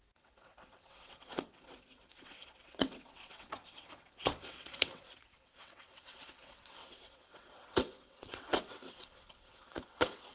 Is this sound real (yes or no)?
no